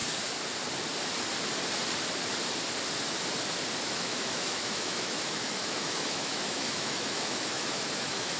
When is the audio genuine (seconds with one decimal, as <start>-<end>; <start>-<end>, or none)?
0.0-3.8